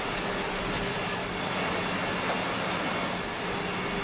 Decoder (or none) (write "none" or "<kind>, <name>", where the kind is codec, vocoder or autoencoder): none